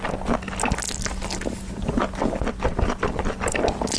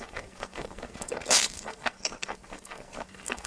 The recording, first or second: first